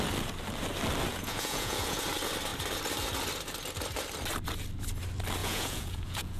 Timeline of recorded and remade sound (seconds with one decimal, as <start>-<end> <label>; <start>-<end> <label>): 0.0-1.1 recorded; 1.1-2.0 remade; 2.0-5.4 recorded; 5.4-6.4 remade